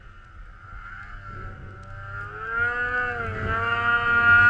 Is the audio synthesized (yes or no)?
no